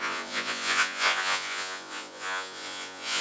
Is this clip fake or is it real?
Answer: fake